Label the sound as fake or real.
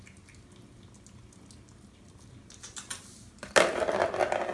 real